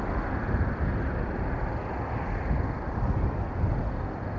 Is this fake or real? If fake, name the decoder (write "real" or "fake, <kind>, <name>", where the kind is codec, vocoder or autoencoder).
real